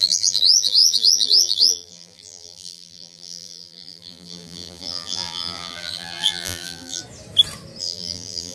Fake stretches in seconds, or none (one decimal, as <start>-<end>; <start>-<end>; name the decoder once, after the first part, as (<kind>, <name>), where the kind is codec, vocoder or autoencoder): 0.0-7.0 (vocoder, BigVGAN v2); 7.8-8.5